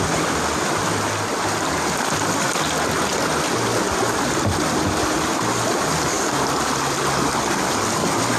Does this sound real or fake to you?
real